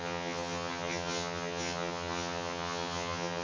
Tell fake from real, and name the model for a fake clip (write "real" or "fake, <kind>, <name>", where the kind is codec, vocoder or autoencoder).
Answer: fake, vocoder, HiFi-GAN